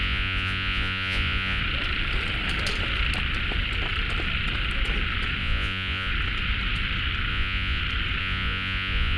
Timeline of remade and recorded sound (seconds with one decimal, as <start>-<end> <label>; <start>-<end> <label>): 0.0-1.6 remade; 1.6-5.4 recorded; 5.4-6.1 remade; 6.1-7.3 recorded; 7.3-7.8 remade; 7.8-8.2 recorded; 8.2-9.2 remade